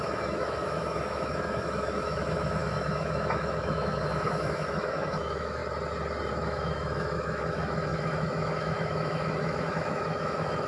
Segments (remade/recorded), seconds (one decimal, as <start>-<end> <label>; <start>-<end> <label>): 0.0-5.6 remade; 5.6-6.3 recorded; 6.3-10.7 remade